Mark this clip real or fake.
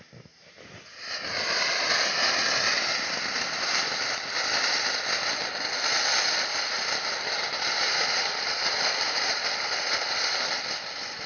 real